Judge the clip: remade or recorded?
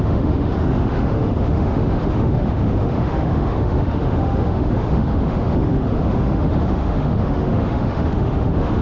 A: remade